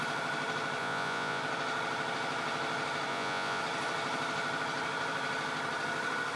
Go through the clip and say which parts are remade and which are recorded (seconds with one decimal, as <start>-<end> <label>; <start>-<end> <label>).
0.0-0.8 recorded; 0.8-1.4 remade; 1.4-3.1 recorded; 3.1-3.6 remade; 3.6-6.4 recorded